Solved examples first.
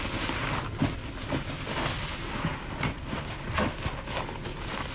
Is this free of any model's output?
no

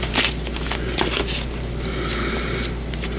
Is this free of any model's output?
yes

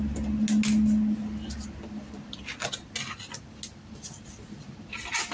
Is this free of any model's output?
yes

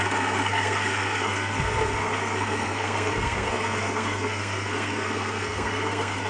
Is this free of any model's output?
no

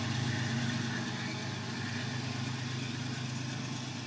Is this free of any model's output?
yes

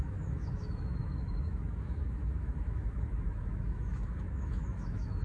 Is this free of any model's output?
no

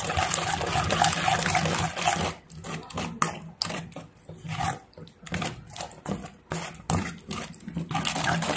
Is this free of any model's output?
yes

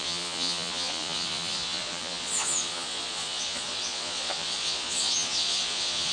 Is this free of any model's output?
no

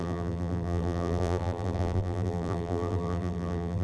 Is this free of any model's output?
no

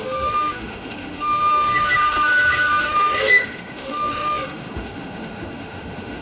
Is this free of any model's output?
no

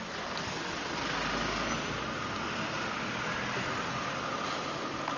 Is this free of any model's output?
yes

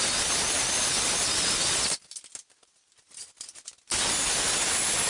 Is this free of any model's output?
yes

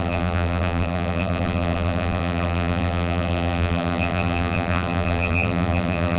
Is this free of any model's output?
no